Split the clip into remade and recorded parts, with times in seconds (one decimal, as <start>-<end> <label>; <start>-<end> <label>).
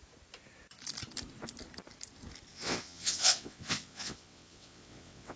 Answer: 0.0-2.5 recorded; 2.5-5.4 remade